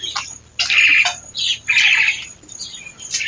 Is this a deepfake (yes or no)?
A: no